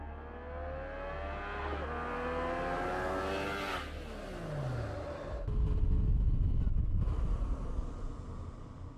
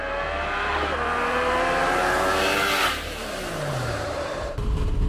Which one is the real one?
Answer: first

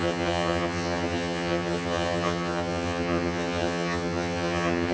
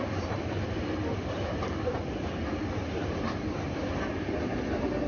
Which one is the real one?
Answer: second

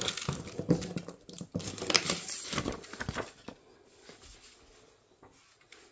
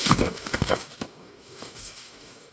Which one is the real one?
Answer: first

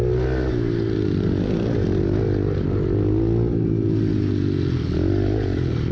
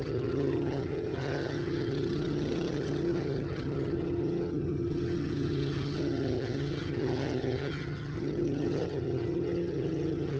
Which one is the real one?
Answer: first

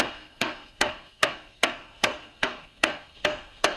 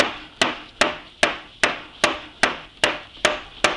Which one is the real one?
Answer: second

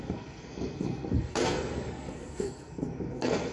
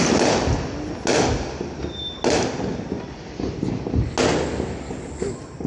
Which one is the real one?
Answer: second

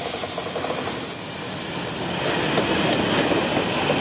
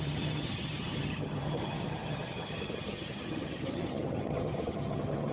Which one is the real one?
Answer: first